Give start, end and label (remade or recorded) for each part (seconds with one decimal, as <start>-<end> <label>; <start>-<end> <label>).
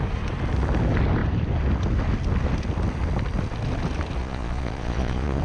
0.0-4.2 recorded; 4.2-5.4 remade